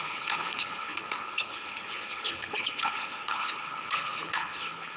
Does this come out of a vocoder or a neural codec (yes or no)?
yes